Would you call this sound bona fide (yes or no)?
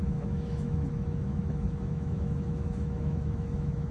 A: no